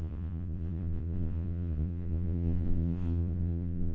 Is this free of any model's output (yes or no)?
no